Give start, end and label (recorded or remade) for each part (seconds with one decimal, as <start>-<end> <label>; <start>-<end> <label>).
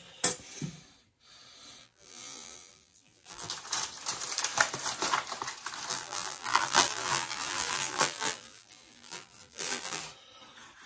0.0-1.8 recorded; 1.8-3.5 remade; 3.5-5.9 recorded; 5.9-10.0 remade; 10.0-10.9 recorded